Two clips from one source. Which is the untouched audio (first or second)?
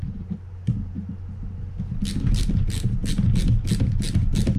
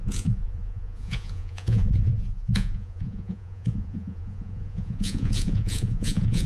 first